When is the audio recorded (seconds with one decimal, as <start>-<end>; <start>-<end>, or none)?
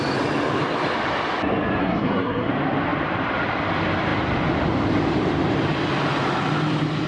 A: 0.0-1.8; 2.5-7.1